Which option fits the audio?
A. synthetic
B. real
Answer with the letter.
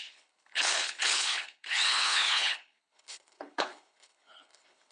A